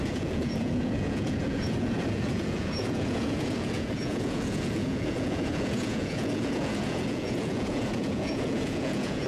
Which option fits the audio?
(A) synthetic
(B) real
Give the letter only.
A